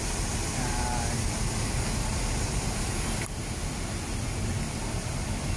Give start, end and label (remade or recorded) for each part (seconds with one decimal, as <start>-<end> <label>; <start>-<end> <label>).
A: 0.0-5.6 recorded